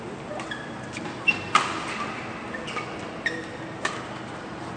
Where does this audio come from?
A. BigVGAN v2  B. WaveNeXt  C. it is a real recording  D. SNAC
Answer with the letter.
C